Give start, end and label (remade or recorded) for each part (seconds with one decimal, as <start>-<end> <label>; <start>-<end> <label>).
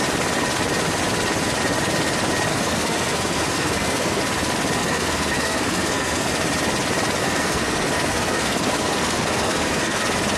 0.0-2.5 recorded; 2.5-4.2 remade; 4.2-4.8 recorded; 4.8-6.3 remade; 6.3-7.2 recorded; 7.2-10.0 remade; 10.0-10.4 recorded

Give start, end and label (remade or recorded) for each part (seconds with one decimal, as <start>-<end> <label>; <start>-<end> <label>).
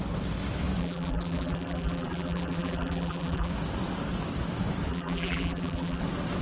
0.0-0.8 recorded; 0.8-3.5 remade; 3.5-4.9 recorded; 4.9-6.0 remade; 6.0-6.4 recorded